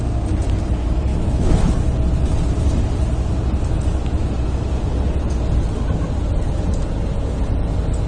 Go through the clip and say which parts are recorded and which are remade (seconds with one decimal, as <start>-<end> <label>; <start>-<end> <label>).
0.0-1.1 recorded; 1.1-1.7 remade; 1.7-8.1 recorded